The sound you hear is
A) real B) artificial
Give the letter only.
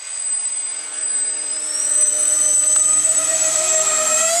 B